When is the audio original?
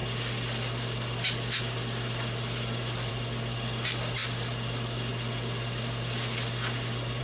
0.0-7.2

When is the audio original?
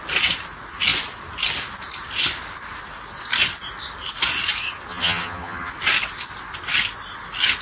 0.0-4.9; 5.7-7.6